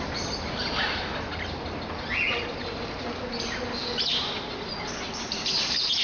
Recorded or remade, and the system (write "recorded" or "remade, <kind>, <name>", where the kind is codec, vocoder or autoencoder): recorded